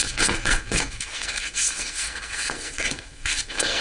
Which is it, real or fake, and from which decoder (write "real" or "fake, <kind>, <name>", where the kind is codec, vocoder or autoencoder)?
fake, codec, SNAC